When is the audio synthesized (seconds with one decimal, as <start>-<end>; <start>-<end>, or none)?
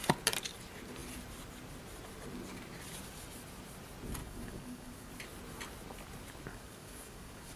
4.2-5.1; 6.5-7.6